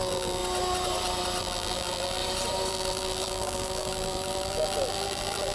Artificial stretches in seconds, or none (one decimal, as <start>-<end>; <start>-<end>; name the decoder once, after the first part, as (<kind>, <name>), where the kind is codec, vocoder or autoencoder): 0.0-0.4 (vocoder, BigVGAN v2); 1.4-2.2; 2.7-5.5